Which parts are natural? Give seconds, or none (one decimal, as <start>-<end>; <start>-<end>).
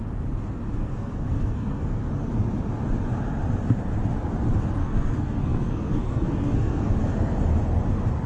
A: 0.0-0.8; 2.1-4.8; 6.9-8.3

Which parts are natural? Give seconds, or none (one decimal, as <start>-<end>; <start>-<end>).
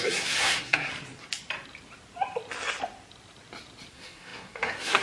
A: 0.9-3.9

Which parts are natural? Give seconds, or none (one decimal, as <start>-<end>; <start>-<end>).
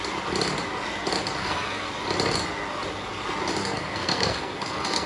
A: 0.0-1.4; 1.9-3.6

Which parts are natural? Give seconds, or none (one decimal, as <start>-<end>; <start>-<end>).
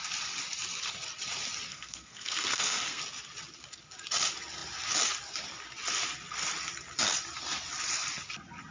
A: 0.0-1.7; 3.0-8.7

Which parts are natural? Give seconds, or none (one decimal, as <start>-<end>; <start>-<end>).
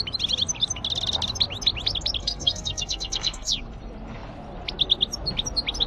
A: 0.0-2.2; 3.5-5.9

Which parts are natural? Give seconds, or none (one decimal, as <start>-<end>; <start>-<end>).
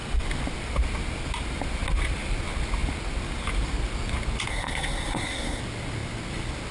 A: 0.0-4.5; 5.6-6.7